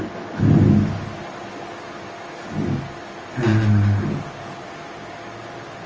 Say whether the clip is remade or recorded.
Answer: recorded